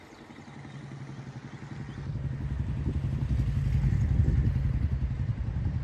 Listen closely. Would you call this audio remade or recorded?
recorded